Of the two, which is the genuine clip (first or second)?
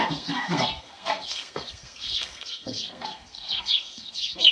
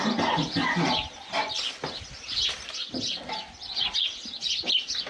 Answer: second